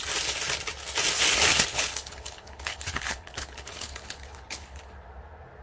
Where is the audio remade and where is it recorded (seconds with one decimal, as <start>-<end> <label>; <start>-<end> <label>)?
0.0-1.7 recorded; 1.7-4.9 remade; 4.9-5.6 recorded

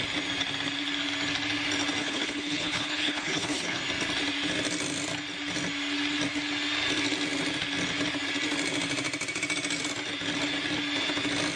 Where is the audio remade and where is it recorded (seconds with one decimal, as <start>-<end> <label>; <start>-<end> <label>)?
0.0-2.0 recorded; 2.0-3.8 remade; 3.8-11.6 recorded

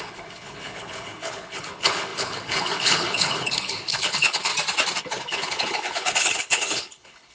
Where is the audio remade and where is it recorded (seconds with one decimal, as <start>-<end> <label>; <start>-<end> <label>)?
0.0-4.5 remade; 4.5-5.0 recorded; 5.0-7.3 remade

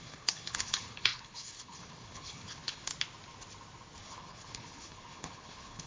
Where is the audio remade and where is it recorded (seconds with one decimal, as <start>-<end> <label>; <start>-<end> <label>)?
0.0-2.9 remade; 2.9-4.0 recorded; 4.0-5.9 remade

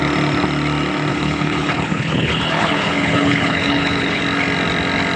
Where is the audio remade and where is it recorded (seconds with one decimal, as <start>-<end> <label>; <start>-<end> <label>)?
0.0-1.1 recorded; 1.1-4.2 remade; 4.2-5.2 recorded